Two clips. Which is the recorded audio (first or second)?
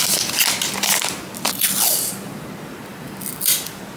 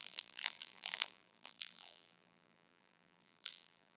first